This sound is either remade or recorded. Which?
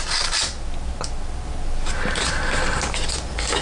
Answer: recorded